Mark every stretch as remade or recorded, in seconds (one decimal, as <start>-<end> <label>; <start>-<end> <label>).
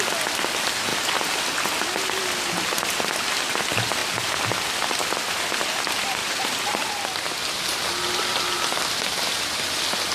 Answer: 0.0-6.2 recorded; 6.2-6.9 remade; 6.9-10.1 recorded